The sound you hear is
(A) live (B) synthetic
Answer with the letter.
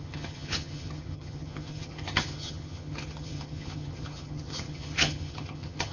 B